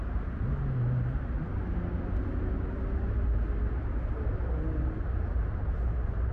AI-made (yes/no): no